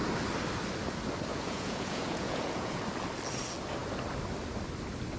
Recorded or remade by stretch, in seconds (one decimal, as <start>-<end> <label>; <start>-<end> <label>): 0.0-1.3 recorded; 1.3-2.8 remade; 2.8-5.2 recorded